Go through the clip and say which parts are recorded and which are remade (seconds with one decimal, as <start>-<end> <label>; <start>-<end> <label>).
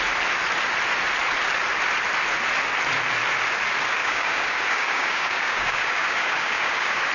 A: 0.0-4.0 recorded; 4.0-7.1 remade